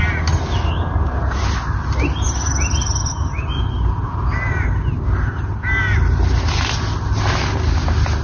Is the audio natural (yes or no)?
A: yes